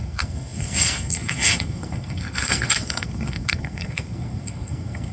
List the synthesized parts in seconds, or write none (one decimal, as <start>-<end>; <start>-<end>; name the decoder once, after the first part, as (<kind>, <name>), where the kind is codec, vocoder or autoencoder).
0.0-5.1 (codec, SNAC)

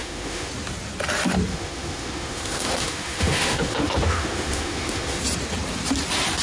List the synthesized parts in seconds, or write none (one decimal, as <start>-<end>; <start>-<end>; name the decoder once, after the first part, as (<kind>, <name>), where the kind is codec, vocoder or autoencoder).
0.0-0.5 (autoencoder, DAC-VAE); 1.5-5.2